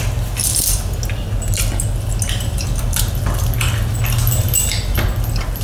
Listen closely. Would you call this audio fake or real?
real